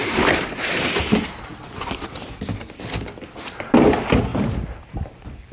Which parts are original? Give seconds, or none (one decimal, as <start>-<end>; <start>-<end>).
1.0-4.3